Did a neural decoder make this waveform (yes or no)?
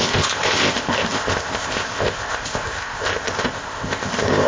yes